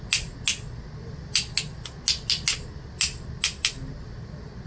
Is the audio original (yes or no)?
yes